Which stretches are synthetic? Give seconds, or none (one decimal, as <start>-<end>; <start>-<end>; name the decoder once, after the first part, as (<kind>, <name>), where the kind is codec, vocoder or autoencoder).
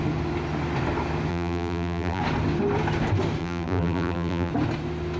1.3-2.2 (vocoder, BigVGAN v2); 3.4-4.5